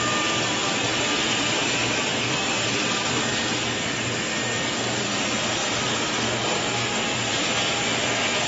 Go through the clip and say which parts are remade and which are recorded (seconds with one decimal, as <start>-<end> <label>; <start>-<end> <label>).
0.0-0.6 recorded; 0.6-4.3 remade; 4.3-8.5 recorded

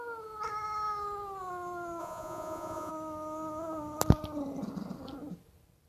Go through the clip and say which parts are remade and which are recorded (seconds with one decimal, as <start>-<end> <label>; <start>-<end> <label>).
0.0-2.0 recorded; 2.0-2.9 remade; 2.9-5.9 recorded

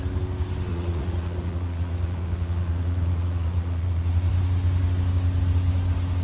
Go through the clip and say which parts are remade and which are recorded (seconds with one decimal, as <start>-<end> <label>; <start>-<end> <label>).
0.0-0.7 recorded; 0.7-4.3 remade; 4.3-6.2 recorded

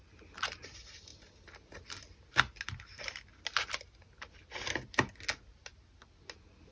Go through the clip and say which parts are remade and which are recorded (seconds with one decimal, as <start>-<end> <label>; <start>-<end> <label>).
0.0-6.7 recorded

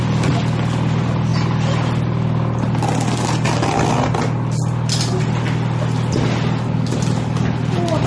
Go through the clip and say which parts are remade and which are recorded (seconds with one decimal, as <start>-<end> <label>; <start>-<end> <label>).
0.0-8.1 recorded